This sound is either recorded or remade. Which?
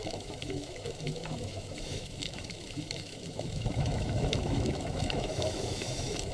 remade